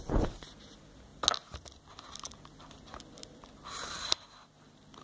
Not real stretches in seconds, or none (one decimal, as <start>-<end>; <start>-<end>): none

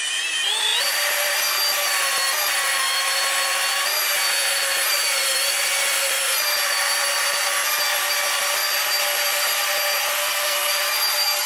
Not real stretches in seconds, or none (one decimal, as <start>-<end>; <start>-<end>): 10.2-10.8

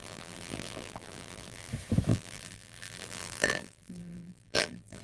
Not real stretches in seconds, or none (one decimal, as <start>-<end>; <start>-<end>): 0.0-1.7; 2.1-5.0

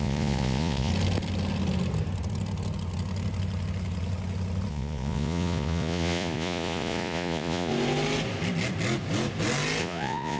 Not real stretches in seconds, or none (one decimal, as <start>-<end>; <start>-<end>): 0.0-0.9; 4.7-7.7; 9.8-10.4